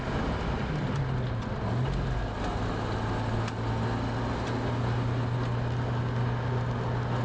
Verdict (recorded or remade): recorded